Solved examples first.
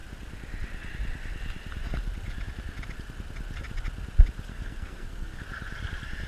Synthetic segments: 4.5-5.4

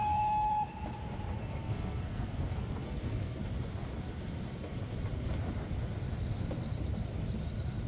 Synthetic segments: 0.0-0.5; 1.4-3.4

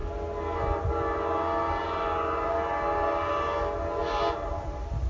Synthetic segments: none